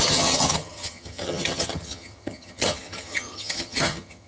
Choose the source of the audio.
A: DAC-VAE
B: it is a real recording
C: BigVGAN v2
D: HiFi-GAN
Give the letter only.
D